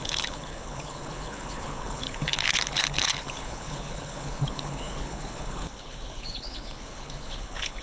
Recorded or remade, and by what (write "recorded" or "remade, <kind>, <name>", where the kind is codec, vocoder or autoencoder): remade, codec, HILCodec